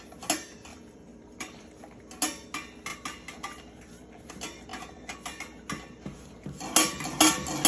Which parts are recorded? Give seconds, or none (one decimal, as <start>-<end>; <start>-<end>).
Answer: 0.0-0.7; 1.9-7.7